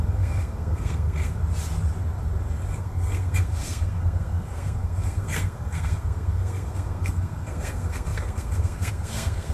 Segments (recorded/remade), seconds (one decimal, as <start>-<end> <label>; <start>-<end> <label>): 0.0-1.4 remade; 1.4-2.8 recorded; 2.8-9.5 remade

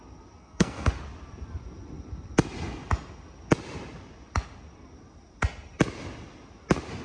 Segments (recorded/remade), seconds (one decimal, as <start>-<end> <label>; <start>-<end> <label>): 0.0-0.4 recorded; 0.4-0.9 remade; 0.9-7.0 recorded

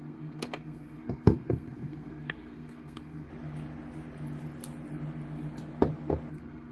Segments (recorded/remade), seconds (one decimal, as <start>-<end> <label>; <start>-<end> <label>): 0.0-3.3 remade; 3.3-6.3 recorded; 6.3-6.7 remade

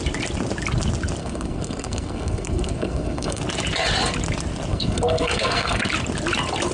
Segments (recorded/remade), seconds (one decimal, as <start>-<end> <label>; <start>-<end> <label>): 0.0-1.2 recorded; 1.2-3.4 remade; 3.4-4.7 recorded; 4.7-5.8 remade; 5.8-6.7 recorded

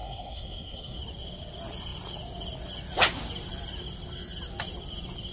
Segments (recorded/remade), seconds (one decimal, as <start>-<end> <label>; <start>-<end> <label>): 0.0-1.0 remade; 1.0-5.3 recorded

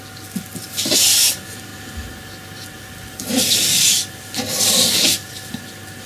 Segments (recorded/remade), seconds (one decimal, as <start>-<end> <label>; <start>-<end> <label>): 0.0-6.1 recorded

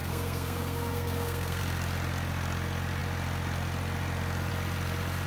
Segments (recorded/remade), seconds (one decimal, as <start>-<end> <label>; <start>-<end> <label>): 0.0-1.6 remade; 1.6-5.3 recorded